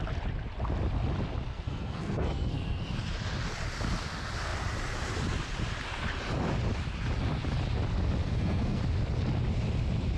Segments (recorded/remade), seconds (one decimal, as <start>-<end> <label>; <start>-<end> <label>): 0.0-1.5 recorded; 1.5-2.9 remade; 2.9-8.2 recorded; 8.2-8.8 remade; 8.8-10.2 recorded

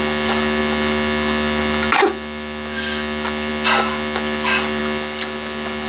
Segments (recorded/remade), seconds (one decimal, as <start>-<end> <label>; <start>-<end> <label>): 0.0-5.9 recorded

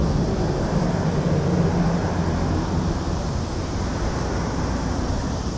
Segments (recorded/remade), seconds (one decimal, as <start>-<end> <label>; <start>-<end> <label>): 0.0-5.6 recorded

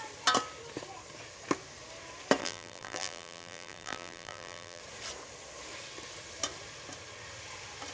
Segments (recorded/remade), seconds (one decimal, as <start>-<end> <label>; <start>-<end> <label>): 0.0-2.4 recorded; 2.4-4.8 remade; 4.8-7.9 recorded